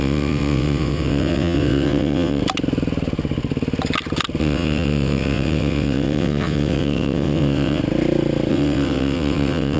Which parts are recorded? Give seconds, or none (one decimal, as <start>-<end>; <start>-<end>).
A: 2.4-4.4; 7.8-8.5